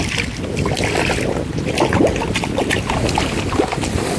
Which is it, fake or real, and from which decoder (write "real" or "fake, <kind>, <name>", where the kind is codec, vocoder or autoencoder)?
real